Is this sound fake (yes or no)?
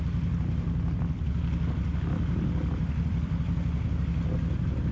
no